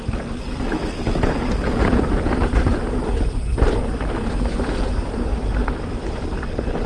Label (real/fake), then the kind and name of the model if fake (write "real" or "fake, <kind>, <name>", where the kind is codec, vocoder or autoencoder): real